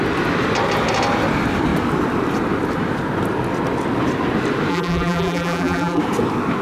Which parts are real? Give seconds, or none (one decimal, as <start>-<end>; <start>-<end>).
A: 0.0-4.7; 6.0-6.6